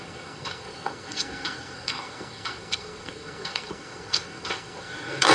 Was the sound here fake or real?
fake